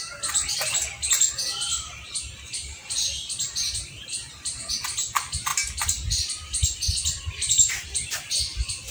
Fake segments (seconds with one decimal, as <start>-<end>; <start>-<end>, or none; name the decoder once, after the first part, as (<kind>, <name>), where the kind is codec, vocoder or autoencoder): none